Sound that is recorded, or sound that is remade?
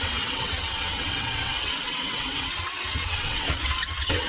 remade